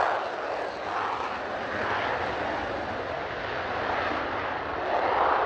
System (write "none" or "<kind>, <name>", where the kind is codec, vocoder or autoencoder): none